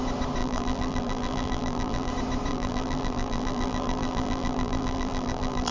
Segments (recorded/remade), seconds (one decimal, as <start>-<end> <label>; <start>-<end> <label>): 0.0-0.4 recorded; 0.4-2.1 remade; 2.1-2.5 recorded; 2.5-5.7 remade